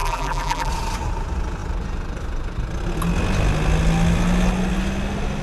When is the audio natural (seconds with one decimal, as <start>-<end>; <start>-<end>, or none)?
0.7-5.4